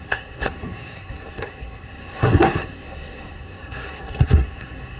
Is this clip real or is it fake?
fake